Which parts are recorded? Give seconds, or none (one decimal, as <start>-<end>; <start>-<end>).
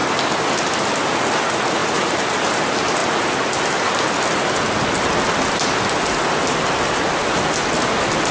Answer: 0.0-1.8; 2.6-8.3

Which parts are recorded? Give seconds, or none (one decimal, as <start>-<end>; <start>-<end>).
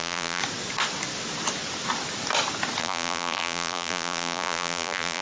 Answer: 0.4-2.8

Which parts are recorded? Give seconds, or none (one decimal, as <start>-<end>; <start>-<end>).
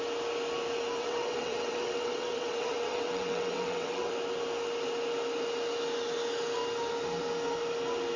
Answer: 0.0-1.0; 4.1-8.2